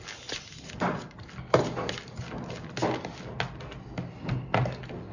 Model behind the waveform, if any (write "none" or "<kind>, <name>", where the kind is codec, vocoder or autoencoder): none